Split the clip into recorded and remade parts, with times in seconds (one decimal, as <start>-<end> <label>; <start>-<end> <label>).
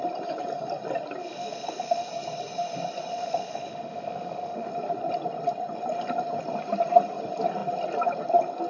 0.0-1.2 recorded; 1.2-2.1 remade; 2.1-3.1 recorded; 3.1-4.7 remade; 4.7-8.7 recorded